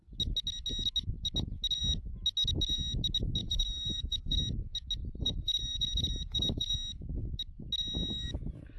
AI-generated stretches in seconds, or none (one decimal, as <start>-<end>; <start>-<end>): 3.4-4.4; 5.0-6.7